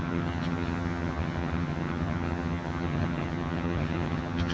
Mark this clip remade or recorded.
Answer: remade